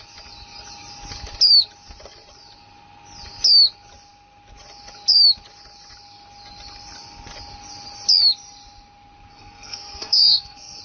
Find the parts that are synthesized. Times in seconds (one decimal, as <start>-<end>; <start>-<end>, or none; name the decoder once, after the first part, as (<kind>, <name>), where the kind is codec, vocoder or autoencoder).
9.3-10.8 (codec, SNAC)